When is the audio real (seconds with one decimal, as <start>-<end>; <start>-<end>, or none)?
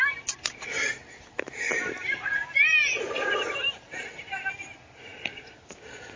0.0-1.0; 4.1-6.2